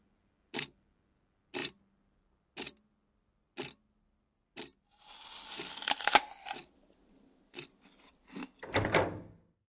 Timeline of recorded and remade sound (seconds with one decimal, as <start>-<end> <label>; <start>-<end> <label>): 0.0-9.7 recorded